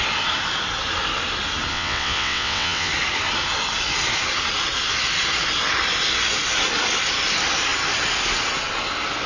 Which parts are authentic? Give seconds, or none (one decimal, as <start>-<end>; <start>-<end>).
0.0-1.7; 2.9-9.3

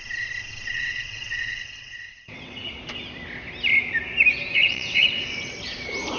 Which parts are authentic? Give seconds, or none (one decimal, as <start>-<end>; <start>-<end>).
0.0-0.7; 2.8-4.5; 5.5-6.2

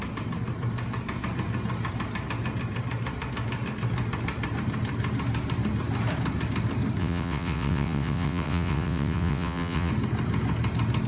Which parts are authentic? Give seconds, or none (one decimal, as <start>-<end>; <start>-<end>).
0.0-7.0; 9.9-11.1

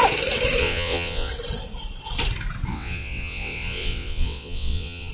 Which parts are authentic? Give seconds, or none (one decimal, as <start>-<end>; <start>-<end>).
0.0-0.6; 1.3-2.7

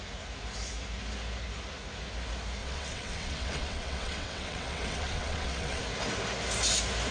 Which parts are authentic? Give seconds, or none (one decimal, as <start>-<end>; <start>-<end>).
0.0-2.6; 5.8-7.1